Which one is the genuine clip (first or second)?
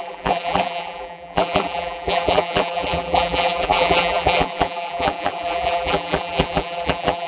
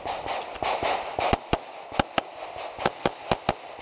second